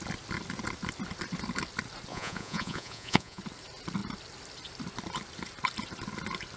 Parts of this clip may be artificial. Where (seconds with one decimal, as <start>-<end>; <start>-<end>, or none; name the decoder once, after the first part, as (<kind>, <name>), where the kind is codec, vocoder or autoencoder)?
2.1-3.4 (vocoder, Vocos)